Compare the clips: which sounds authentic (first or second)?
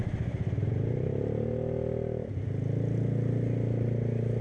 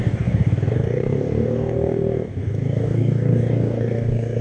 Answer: first